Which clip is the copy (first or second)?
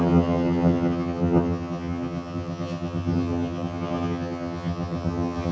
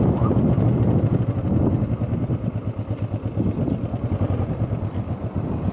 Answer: first